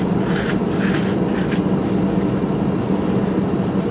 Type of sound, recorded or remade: recorded